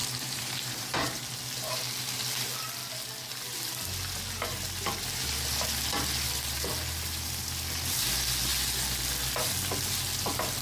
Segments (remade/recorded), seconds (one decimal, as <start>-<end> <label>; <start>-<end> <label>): 0.0-1.3 remade; 1.3-10.6 recorded

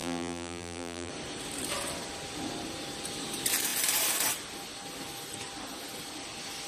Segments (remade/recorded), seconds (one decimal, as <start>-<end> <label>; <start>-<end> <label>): 0.0-1.1 remade; 1.1-6.7 recorded

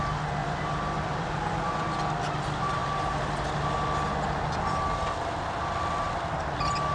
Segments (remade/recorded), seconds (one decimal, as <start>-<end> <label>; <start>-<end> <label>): 0.0-0.4 recorded; 0.4-1.7 remade; 1.7-6.9 recorded

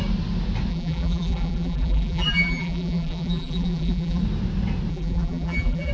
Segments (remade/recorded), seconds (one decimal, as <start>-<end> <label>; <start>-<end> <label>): 0.0-0.7 recorded; 0.7-4.2 remade; 4.2-4.9 recorded; 4.9-5.9 remade

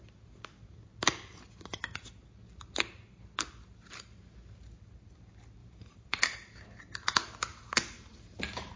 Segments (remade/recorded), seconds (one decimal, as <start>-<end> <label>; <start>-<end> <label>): 0.0-5.6 recorded; 5.6-6.2 remade; 6.2-7.5 recorded; 7.5-8.8 remade